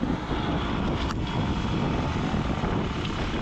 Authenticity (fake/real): real